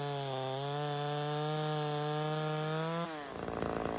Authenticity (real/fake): real